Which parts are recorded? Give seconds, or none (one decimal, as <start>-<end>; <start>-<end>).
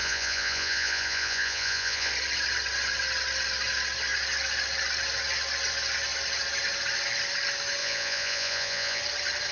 2.1-7.8; 9.0-9.5